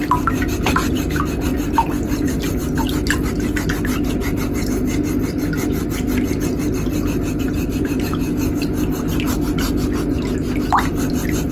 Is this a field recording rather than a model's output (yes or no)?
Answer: yes